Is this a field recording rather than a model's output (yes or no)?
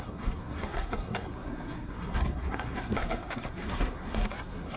no